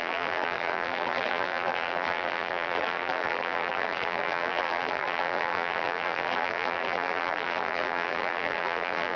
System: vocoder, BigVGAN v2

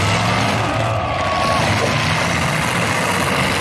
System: none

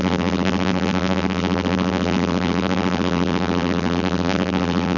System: vocoder, BigVGAN v2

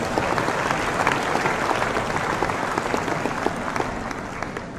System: none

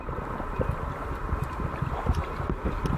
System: none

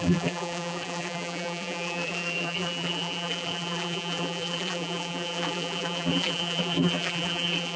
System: vocoder, BigVGAN v2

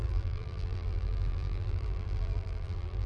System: vocoder, BigVGAN v2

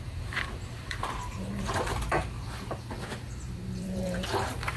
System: vocoder, BigVGAN v2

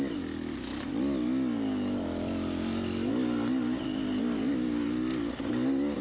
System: none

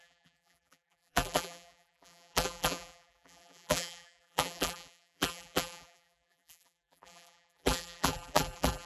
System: vocoder, BigVGAN v2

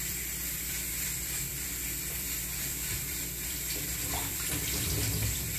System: vocoder, BigVGAN v2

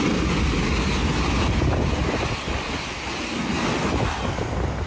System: none